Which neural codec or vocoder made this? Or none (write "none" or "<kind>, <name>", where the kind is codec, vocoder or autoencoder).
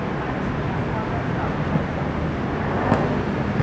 none